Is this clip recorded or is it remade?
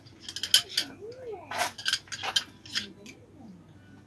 recorded